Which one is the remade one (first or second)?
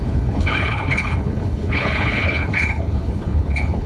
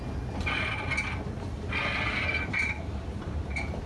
first